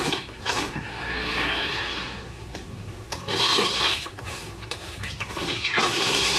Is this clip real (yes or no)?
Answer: no